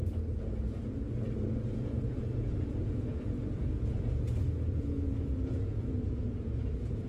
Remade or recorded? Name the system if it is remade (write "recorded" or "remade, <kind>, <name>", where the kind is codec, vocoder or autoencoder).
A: remade, vocoder, Vocos